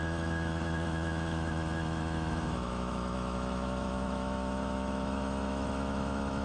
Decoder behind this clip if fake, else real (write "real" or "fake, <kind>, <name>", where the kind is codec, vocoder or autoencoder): fake, autoencoder, DAC-VAE